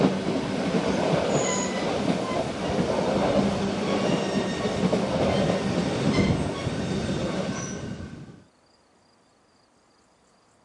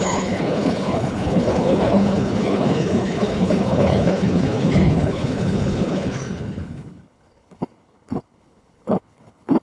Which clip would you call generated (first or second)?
second